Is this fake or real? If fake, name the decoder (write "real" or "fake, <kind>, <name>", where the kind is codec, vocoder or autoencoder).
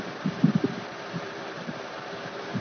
fake, vocoder, BigVGAN v2